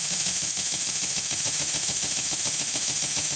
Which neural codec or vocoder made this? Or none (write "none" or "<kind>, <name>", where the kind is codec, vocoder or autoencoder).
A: autoencoder, DAC-VAE